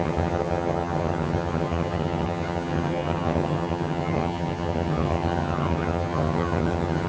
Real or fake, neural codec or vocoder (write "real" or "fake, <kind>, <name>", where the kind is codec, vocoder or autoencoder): fake, vocoder, HiFi-GAN